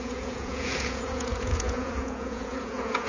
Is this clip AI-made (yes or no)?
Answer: yes